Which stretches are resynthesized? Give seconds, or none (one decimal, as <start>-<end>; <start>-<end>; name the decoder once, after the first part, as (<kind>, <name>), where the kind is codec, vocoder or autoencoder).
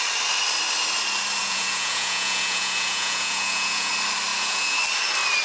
1.4-3.9 (vocoder, Vocos); 4.3-4.8